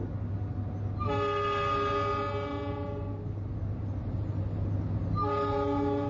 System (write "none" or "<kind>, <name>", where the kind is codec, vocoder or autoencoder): none